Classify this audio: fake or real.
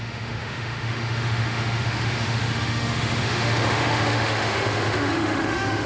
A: fake